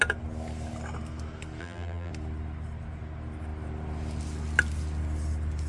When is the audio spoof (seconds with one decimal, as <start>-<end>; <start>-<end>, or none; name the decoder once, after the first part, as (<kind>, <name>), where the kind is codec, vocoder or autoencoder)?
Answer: 1.6-2.1 (vocoder, BigVGAN v2)